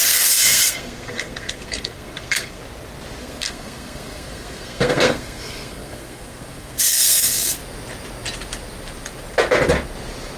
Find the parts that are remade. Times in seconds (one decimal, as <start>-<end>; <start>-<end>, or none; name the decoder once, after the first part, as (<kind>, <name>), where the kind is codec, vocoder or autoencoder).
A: 0.0-2.6 (codec, SNAC); 3.2-7.6